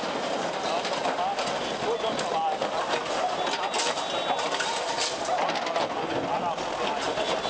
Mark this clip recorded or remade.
recorded